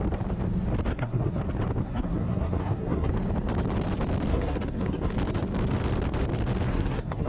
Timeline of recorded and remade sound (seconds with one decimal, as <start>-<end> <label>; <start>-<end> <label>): 0.0-0.9 recorded; 0.9-1.4 remade; 1.4-1.8 recorded; 1.8-3.1 remade; 3.1-4.3 recorded; 4.3-5.1 remade; 5.1-6.7 recorded; 6.7-7.3 remade